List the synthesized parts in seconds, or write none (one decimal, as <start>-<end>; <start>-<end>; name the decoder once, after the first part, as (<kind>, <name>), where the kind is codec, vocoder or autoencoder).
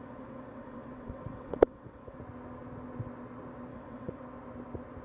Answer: 0.0-2.2 (vocoder, WaveNeXt); 3.7-4.2